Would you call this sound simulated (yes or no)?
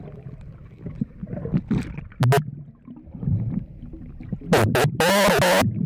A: no